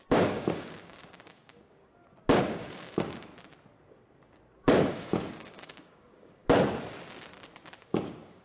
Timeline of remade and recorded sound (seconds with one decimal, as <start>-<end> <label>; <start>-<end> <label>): 0.0-1.8 remade; 1.8-2.4 recorded; 2.4-3.3 remade; 3.3-4.9 recorded; 4.9-6.4 remade; 6.4-7.8 recorded; 7.8-8.4 remade